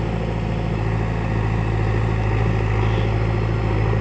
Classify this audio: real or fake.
real